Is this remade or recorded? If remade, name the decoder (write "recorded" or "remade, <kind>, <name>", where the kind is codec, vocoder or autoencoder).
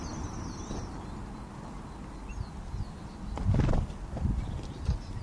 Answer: recorded